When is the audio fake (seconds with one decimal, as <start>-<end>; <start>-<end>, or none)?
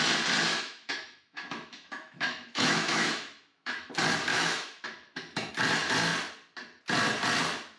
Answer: 0.5-3.9; 4.3-5.5